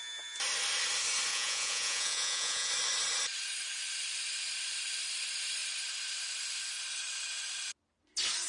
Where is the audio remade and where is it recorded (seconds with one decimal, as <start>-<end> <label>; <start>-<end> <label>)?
0.0-1.3 recorded; 1.3-2.7 remade; 2.7-8.5 recorded